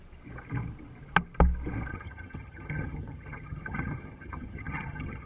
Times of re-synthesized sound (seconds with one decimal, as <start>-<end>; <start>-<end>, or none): 1.9-5.3

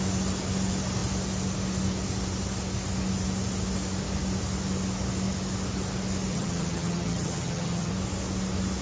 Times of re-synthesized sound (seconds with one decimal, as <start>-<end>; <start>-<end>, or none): 6.3-7.9

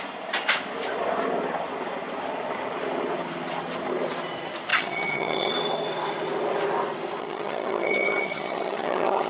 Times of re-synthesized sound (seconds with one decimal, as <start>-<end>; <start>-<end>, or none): 4.7-5.5; 7.2-9.3

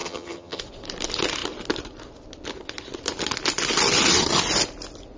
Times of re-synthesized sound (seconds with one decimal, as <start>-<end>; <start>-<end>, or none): 0.0-0.6

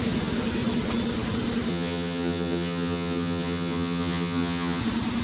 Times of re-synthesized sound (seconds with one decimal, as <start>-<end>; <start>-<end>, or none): 1.7-4.8

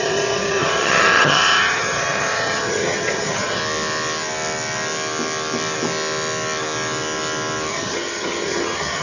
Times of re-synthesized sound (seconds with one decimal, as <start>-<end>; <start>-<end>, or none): 0.0-3.6; 7.7-9.0

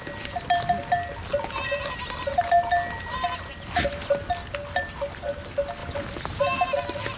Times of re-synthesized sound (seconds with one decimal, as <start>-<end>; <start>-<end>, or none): none

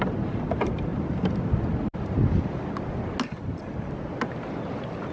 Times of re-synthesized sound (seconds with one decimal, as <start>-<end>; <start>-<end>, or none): none